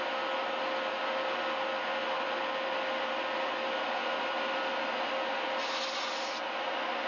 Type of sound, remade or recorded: recorded